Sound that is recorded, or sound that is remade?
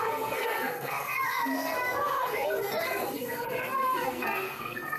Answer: remade